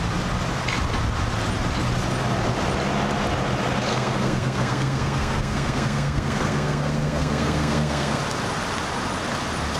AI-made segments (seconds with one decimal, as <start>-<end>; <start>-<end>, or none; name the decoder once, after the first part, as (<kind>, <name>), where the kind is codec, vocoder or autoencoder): 3.9-8.2 (codec, SNAC)